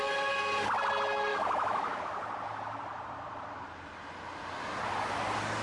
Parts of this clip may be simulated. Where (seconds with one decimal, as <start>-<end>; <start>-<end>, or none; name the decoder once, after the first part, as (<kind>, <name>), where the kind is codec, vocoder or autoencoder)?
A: 1.3-2.0 (autoencoder, DAC-VAE)